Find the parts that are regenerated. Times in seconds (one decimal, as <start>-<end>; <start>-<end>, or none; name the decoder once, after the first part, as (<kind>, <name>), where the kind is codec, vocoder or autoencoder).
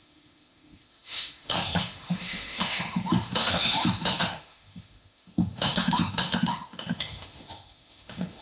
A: 0.0-8.4 (autoencoder, DAC-VAE)